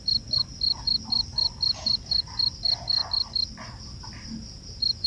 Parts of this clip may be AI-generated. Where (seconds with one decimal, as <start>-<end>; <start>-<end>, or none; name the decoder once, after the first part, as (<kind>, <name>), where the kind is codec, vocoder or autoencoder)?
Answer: none